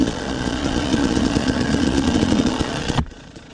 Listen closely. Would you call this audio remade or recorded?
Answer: remade